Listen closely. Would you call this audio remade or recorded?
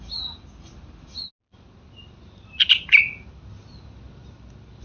recorded